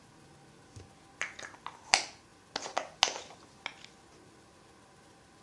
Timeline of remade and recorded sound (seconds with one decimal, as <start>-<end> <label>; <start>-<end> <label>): 0.0-5.4 recorded